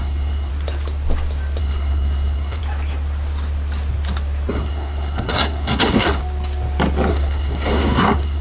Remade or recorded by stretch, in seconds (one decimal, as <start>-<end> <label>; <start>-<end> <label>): 0.0-0.5 remade; 0.5-1.6 recorded; 1.6-2.6 remade; 2.6-4.5 recorded; 4.5-6.2 remade; 6.2-7.1 recorded; 7.1-8.4 remade